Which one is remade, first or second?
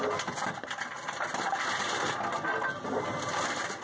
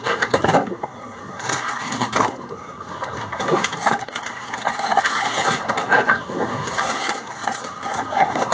second